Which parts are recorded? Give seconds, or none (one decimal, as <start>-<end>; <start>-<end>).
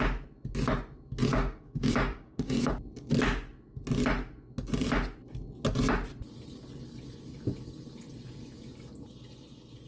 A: 0.0-1.3; 2.7-9.9